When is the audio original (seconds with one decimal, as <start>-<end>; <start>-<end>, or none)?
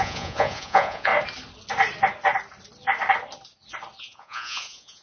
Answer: 1.1-4.0